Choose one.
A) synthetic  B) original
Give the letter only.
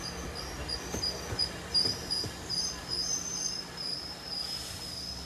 B